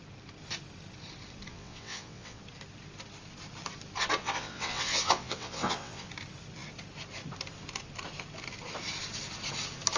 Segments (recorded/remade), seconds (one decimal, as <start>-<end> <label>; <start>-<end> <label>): 0.0-1.5 recorded; 1.5-2.4 remade; 2.4-4.2 recorded; 4.2-6.1 remade; 6.1-10.0 recorded